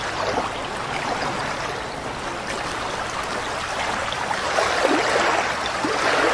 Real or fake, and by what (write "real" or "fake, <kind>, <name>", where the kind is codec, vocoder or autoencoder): real